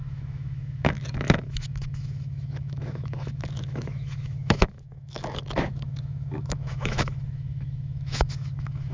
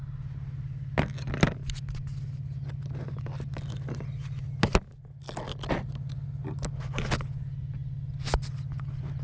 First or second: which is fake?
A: first